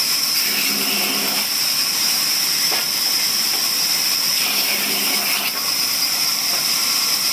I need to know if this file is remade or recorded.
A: recorded